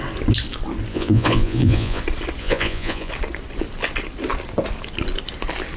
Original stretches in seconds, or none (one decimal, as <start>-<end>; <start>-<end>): 0.0-0.9; 2.0-2.4; 3.1-5.8